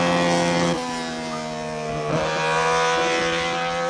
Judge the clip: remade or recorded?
recorded